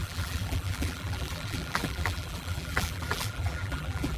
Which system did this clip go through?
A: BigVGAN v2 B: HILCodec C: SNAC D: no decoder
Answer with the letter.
A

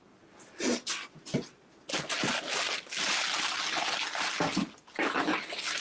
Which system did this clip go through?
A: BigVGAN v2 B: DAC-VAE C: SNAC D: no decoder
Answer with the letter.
D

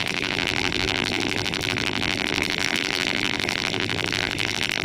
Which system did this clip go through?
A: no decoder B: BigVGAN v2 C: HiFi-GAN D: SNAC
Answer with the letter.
B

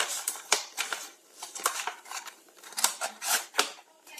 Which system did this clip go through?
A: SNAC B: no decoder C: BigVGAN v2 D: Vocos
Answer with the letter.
C